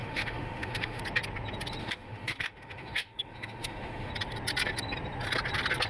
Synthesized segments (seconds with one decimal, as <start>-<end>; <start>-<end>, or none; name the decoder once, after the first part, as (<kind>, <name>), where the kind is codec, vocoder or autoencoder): 0.0-1.0 (autoencoder, DAC-VAE); 1.8-4.1